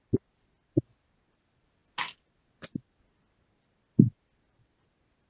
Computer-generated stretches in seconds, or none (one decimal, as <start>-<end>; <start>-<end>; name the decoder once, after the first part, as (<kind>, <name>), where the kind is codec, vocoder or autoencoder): none